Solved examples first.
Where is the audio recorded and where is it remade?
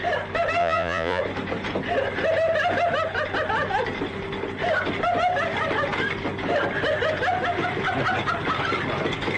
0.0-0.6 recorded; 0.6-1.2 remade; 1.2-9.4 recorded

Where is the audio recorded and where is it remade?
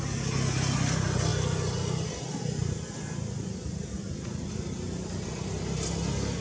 0.0-6.4 recorded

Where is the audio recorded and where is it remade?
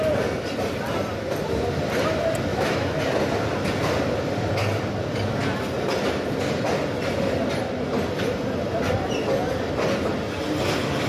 0.0-2.5 recorded; 2.5-3.0 remade; 3.0-11.1 recorded